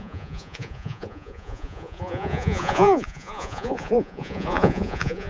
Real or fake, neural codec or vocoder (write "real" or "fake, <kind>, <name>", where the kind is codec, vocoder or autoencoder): fake, vocoder, Vocos